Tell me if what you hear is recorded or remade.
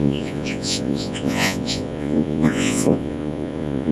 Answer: remade